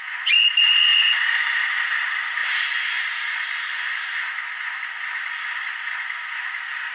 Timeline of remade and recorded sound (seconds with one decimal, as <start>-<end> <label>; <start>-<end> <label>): 0.0-6.9 recorded